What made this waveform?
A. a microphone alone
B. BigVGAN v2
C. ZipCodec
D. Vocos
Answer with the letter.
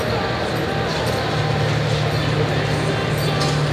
A